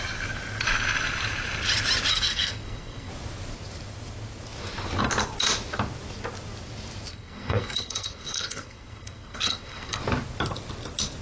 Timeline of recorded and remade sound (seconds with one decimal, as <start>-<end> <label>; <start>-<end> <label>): 0.0-2.1 recorded; 2.1-3.1 remade; 3.1-7.1 recorded; 7.1-10.0 remade; 10.0-11.2 recorded